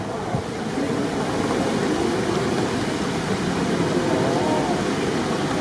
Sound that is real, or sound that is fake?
real